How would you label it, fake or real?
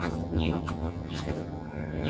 fake